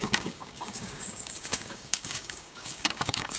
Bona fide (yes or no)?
no